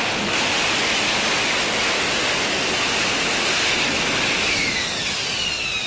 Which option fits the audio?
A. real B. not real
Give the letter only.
A